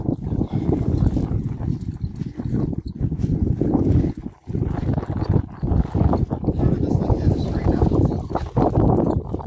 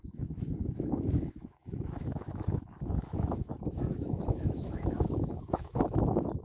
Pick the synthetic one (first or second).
second